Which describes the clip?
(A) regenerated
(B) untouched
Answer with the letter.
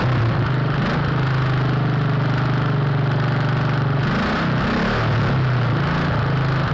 B